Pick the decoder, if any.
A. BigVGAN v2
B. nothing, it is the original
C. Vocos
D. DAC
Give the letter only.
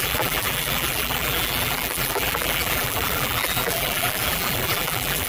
A